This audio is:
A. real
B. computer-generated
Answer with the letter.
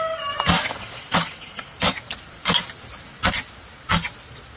A